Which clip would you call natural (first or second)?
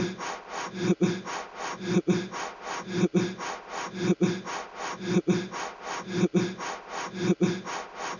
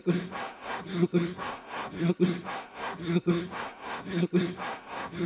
first